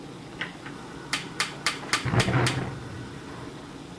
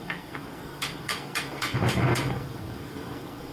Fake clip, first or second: second